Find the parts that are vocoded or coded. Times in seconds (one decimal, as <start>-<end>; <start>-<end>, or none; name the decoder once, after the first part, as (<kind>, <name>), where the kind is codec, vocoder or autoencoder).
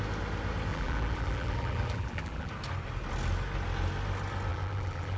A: 0.7-2.5 (vocoder, BigVGAN v2); 4.5-5.2